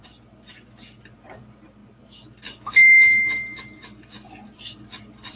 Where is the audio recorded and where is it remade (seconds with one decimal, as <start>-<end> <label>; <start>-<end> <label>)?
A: 0.0-5.4 recorded